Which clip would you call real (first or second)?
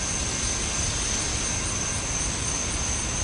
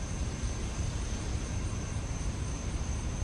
first